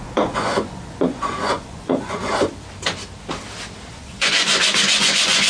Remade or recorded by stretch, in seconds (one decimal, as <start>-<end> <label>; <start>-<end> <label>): 0.0-2.3 remade; 2.3-3.9 recorded; 3.9-5.5 remade